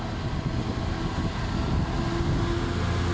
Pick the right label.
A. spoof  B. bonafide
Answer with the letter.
B